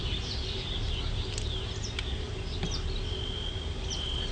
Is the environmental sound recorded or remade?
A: recorded